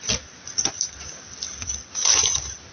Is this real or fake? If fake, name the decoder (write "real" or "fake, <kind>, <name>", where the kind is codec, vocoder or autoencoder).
real